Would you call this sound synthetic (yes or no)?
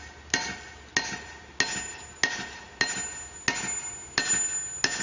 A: no